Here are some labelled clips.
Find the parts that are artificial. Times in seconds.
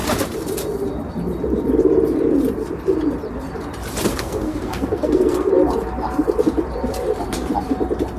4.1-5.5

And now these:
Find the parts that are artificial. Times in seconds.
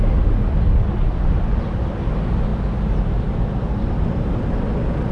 none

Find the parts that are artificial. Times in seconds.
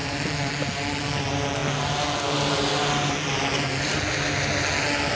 none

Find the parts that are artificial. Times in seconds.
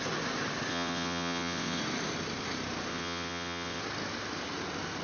0.7-1.8; 2.9-3.8